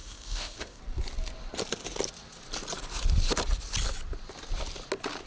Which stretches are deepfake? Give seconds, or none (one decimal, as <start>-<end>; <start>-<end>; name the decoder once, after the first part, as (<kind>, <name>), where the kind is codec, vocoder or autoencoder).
0.0-0.8 (codec, ZipCodec)